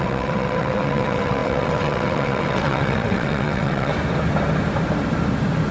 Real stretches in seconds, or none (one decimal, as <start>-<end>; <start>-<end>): 3.9-5.7